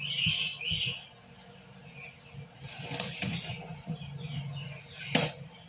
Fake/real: real